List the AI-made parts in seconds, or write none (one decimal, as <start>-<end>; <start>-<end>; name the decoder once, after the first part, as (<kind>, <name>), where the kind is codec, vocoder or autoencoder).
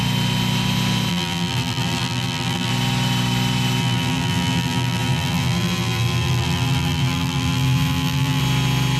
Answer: 1.1-2.7 (vocoder, BigVGAN v2); 3.8-8.4